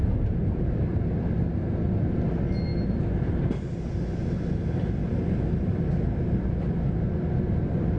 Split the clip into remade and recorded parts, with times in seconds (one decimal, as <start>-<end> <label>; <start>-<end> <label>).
0.0-8.0 recorded